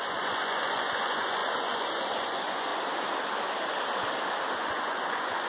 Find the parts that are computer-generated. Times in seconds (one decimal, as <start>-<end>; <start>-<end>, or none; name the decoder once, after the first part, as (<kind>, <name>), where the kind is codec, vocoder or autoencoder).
0.0-2.7 (vocoder, Vocos); 4.6-5.5

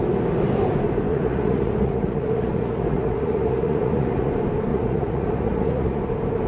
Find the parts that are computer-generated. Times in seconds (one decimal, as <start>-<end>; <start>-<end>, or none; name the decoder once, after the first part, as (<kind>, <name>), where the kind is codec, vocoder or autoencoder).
1.1-4.3 (vocoder, Vocos); 4.7-6.0

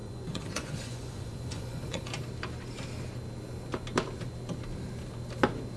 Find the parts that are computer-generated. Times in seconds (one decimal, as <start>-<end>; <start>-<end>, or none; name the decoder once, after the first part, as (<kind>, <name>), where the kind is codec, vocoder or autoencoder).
0.0-2.1 (vocoder, Vocos)

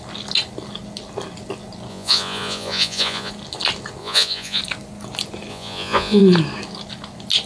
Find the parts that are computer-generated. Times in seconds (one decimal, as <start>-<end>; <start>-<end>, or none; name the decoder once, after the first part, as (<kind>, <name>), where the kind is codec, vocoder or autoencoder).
1.9-3.3 (vocoder, Vocos); 4.0-4.6; 5.5-6.2